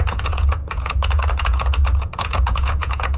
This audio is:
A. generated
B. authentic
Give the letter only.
A